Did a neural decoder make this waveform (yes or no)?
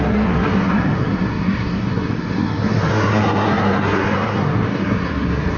yes